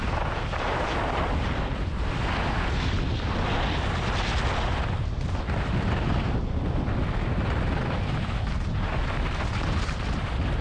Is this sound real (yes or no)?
yes